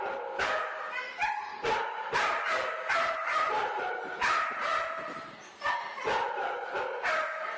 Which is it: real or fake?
real